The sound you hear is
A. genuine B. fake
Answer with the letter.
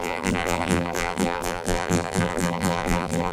B